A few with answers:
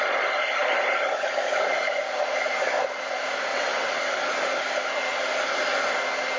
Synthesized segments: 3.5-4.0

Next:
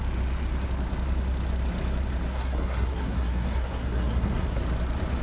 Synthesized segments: 2.3-4.6

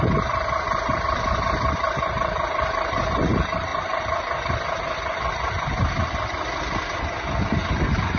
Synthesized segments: 0.0-3.7; 7.7-8.2

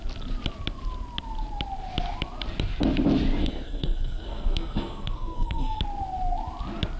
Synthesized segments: 3.4-5.8

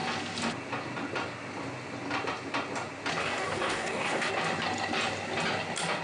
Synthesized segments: 3.2-4.3

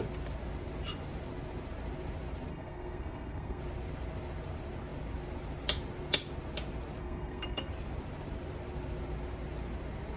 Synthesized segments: 2.5-3.6; 7.0-7.7

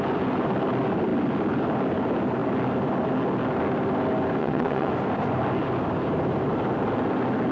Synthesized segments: 4.4-4.9

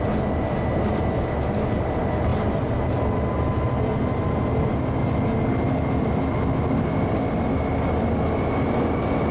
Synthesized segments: none